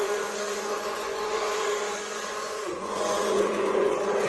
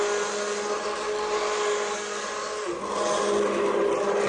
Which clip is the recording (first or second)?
second